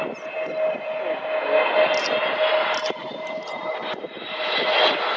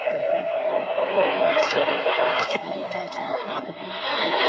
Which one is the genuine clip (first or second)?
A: first